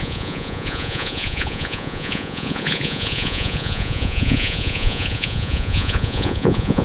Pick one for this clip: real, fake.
fake